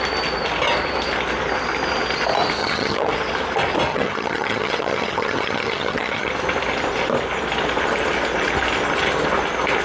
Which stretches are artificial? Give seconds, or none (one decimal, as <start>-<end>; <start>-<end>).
2.6-3.1; 3.9-6.3